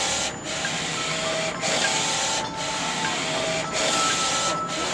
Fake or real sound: real